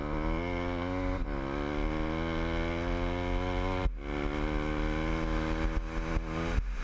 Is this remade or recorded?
recorded